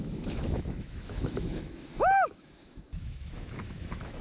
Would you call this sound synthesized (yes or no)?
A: yes